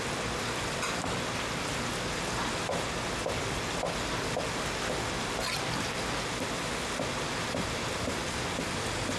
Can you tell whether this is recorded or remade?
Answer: recorded